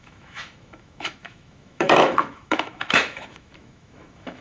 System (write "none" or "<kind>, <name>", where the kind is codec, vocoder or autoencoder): autoencoder, DAC-VAE